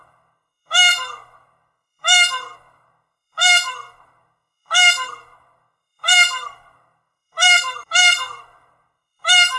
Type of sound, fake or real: fake